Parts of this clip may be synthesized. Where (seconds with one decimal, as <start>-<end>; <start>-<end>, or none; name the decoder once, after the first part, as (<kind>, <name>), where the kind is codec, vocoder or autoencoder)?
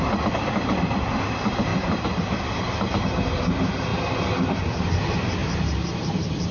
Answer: 0.0-3.9 (vocoder, BigVGAN v2); 4.5-6.5